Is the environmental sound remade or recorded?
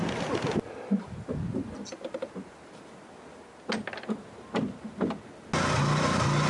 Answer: recorded